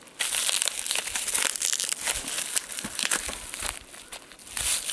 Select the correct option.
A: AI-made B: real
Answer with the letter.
B